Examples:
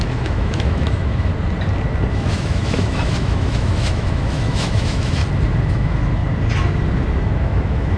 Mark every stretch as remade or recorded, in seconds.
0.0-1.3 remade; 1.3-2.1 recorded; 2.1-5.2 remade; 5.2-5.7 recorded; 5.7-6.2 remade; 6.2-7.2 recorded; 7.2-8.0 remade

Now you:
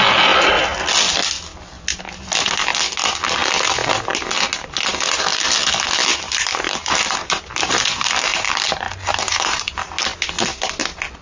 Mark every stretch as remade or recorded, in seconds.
0.0-6.1 recorded; 6.1-9.9 remade; 9.9-11.2 recorded

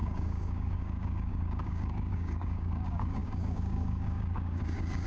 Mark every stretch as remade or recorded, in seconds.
0.0-5.1 remade

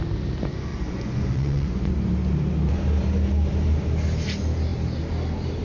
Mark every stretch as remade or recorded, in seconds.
0.0-0.7 recorded; 0.7-1.9 remade; 1.9-5.6 recorded

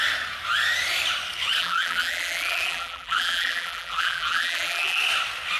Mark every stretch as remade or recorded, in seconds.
0.0-1.6 recorded; 1.6-5.0 remade; 5.0-5.6 recorded

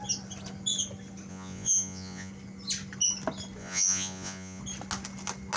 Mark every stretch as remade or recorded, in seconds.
0.0-1.3 recorded; 1.3-2.3 remade; 2.3-3.6 recorded; 3.6-4.6 remade; 4.6-5.6 recorded